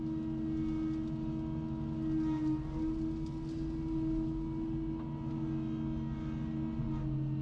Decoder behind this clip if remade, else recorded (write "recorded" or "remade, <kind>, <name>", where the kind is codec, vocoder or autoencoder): recorded